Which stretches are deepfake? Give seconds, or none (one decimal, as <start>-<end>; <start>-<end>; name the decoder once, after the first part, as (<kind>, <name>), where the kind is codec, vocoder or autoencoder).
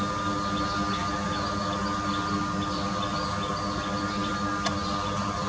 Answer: none